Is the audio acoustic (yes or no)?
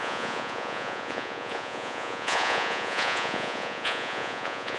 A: no